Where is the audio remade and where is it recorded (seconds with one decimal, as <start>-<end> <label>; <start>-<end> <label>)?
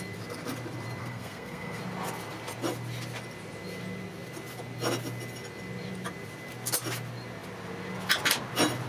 0.0-1.0 recorded; 1.0-1.8 remade; 1.8-8.9 recorded